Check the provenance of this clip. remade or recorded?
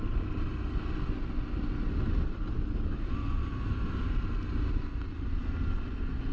recorded